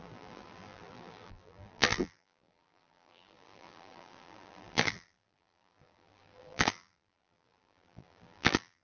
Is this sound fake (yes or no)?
yes